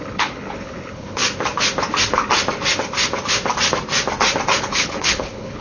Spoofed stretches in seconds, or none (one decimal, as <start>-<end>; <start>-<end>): 0.0-1.2; 4.6-5.6